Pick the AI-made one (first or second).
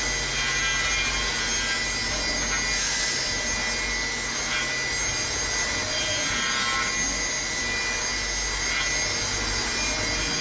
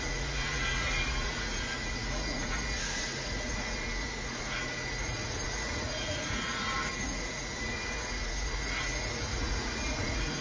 second